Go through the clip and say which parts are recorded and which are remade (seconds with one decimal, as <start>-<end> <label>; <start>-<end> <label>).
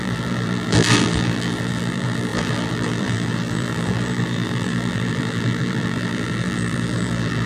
0.0-7.5 remade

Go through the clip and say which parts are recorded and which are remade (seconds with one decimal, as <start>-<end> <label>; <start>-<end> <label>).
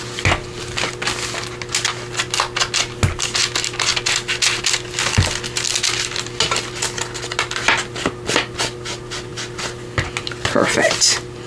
0.0-11.5 recorded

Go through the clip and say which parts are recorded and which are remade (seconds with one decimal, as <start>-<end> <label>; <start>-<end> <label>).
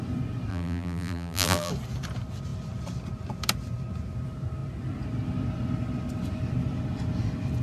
0.0-0.5 recorded; 0.5-1.7 remade; 1.7-7.6 recorded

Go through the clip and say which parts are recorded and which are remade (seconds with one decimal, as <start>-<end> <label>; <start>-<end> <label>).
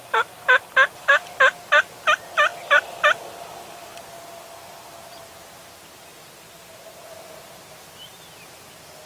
0.0-0.6 remade; 0.6-9.1 recorded